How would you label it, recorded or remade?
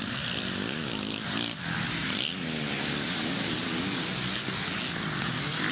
recorded